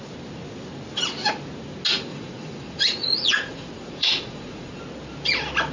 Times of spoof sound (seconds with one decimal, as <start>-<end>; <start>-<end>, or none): 2.1-4.8